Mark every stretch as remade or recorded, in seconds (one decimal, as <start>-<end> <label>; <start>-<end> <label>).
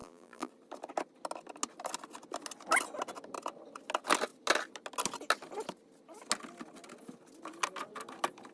0.0-0.5 remade; 0.5-8.5 recorded